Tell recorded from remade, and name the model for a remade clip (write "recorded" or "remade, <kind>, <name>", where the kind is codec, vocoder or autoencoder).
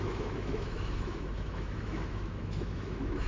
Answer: remade, autoencoder, DAC-VAE